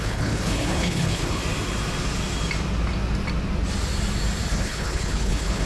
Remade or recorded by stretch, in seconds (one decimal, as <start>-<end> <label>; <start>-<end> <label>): 0.0-1.4 remade; 1.4-4.5 recorded; 4.5-5.7 remade